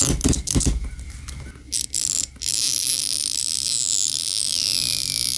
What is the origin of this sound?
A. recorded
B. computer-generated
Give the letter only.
A